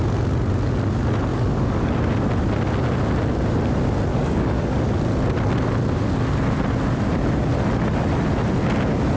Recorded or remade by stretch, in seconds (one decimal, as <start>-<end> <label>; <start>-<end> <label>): 0.0-1.3 recorded; 1.3-1.9 remade; 1.9-4.1 recorded; 4.1-4.8 remade; 4.8-9.2 recorded